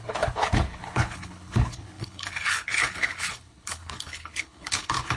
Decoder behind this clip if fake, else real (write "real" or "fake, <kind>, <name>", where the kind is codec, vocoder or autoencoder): fake, codec, HILCodec